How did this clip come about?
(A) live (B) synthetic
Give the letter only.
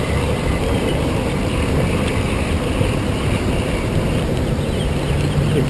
B